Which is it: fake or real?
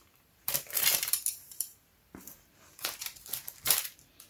fake